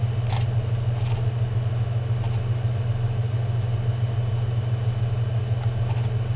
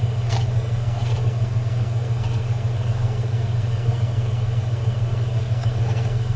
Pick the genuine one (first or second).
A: first